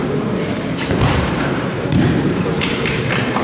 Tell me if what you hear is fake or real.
fake